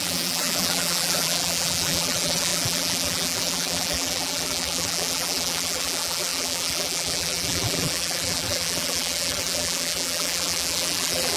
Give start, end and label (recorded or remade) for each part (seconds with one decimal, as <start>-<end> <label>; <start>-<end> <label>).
0.0-11.4 remade